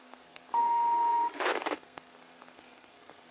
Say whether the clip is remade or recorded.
remade